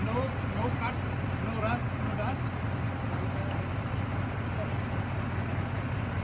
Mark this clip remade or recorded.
recorded